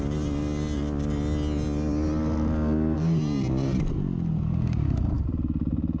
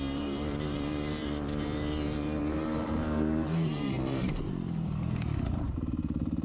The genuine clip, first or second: first